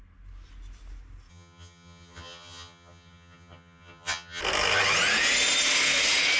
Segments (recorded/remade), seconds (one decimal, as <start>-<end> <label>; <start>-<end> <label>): 0.0-1.3 recorded; 1.3-4.4 remade; 4.4-6.4 recorded